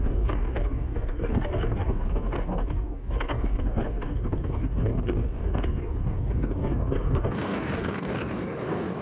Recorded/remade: remade